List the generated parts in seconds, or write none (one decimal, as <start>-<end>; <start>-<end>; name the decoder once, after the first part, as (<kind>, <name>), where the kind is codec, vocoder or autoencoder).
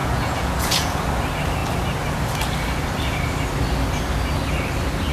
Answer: 0.0-1.0 (vocoder, Vocos)